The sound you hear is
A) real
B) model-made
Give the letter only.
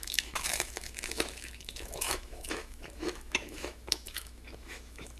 B